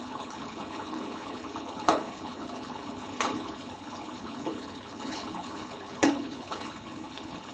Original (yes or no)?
no